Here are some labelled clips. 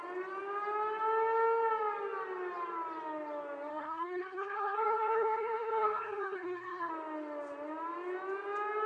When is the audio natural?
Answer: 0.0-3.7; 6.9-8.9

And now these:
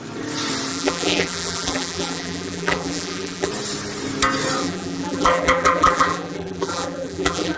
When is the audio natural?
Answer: 0.0-0.7; 3.5-4.6

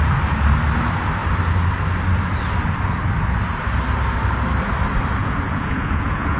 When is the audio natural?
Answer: 0.0-5.2

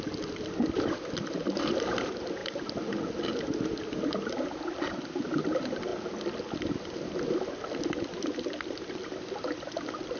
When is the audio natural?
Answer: 0.0-10.2

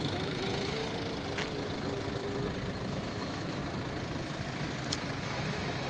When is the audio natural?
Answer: 0.8-2.9; 3.6-5.2

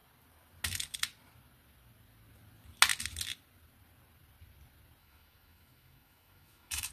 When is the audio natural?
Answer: 0.0-5.0